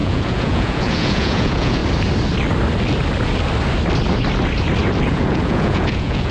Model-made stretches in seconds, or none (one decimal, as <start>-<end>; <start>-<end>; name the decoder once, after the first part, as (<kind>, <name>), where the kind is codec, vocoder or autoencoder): 0.0-1.8 (vocoder, Vocos); 5.1-6.3